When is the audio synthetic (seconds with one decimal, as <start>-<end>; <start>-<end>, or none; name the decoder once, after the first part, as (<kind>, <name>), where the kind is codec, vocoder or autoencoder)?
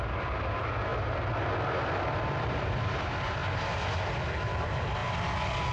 0.0-0.9 (vocoder, BigVGAN v2); 1.9-3.4; 4.1-5.0